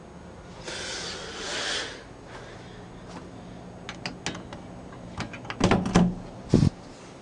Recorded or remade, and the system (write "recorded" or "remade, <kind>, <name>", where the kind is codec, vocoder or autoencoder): recorded